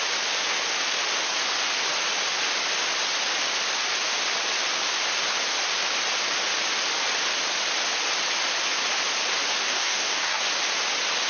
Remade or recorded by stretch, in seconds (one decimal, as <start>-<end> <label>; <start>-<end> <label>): 0.0-9.7 recorded; 9.7-10.4 remade; 10.4-11.3 recorded